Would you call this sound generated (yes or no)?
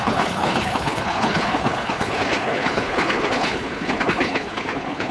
yes